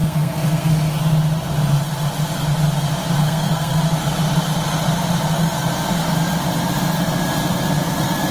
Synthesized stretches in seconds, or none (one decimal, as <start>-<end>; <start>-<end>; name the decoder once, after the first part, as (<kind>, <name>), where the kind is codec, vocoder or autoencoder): 0.0-0.7 (codec, SNAC); 3.2-3.8